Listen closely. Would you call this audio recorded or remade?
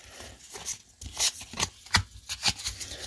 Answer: recorded